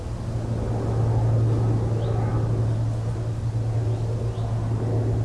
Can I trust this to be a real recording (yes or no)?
yes